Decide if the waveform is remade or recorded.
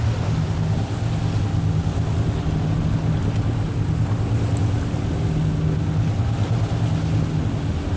recorded